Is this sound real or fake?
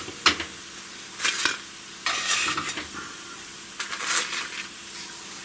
real